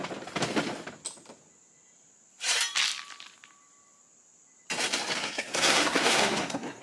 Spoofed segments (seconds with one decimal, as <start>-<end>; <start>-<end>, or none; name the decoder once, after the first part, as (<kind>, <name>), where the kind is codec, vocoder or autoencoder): 5.2-6.8 (codec, SNAC)